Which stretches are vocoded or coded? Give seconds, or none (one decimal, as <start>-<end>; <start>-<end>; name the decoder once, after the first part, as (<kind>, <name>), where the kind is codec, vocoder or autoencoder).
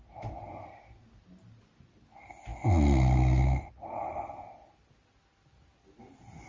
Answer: none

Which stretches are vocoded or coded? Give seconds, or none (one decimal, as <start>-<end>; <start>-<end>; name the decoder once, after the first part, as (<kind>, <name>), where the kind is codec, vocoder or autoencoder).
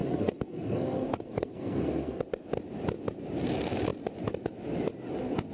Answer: 0.0-2.2 (codec, SNAC)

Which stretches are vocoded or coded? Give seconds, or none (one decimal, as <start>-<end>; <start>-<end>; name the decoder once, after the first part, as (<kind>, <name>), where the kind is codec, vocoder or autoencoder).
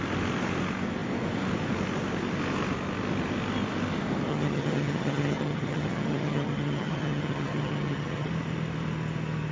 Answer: 4.3-8.3 (vocoder, HiFi-GAN)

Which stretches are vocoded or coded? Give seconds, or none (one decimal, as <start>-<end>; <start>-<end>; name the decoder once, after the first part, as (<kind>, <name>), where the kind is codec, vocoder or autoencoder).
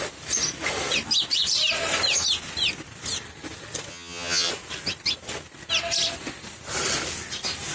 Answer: 3.9-4.5 (vocoder, HiFi-GAN)